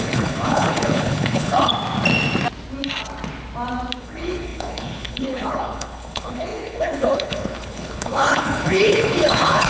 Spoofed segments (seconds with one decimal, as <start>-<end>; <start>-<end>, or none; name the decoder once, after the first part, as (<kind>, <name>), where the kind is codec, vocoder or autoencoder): 0.0-1.7 (codec, HILCodec); 4.0-9.7